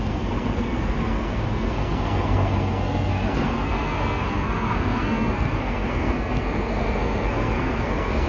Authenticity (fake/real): fake